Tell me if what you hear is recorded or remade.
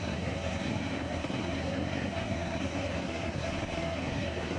remade